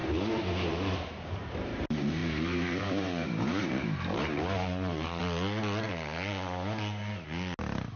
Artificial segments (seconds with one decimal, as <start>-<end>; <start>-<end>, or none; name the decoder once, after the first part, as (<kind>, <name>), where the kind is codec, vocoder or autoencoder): 0.6-5.2 (vocoder, BigVGAN v2)